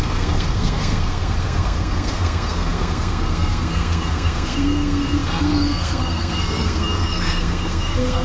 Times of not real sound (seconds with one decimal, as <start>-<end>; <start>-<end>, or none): 0.0-8.2